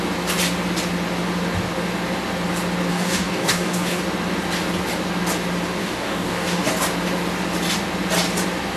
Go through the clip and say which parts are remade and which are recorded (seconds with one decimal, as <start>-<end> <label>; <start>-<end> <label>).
0.0-2.9 recorded; 2.9-4.0 remade; 4.0-5.8 recorded; 5.8-6.7 remade; 6.7-8.8 recorded

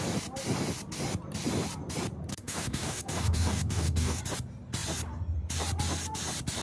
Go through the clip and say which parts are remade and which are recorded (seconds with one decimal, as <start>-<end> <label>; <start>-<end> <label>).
0.0-2.3 recorded; 2.3-4.2 remade; 4.2-6.6 recorded

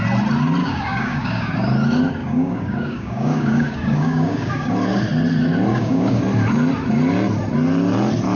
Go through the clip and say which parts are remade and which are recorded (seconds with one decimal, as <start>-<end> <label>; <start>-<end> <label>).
0.0-0.6 recorded; 0.6-1.5 remade; 1.5-2.2 recorded; 2.2-4.7 remade; 4.7-5.7 recorded; 5.7-6.2 remade; 6.2-8.4 recorded

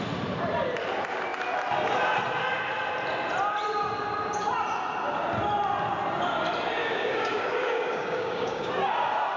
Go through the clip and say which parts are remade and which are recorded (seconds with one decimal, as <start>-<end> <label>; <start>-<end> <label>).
0.0-6.8 recorded; 6.8-8.7 remade; 8.7-9.4 recorded

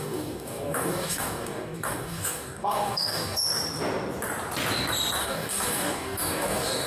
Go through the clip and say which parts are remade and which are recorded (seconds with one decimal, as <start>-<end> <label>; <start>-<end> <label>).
0.0-3.4 remade; 3.4-5.2 recorded; 5.2-6.9 remade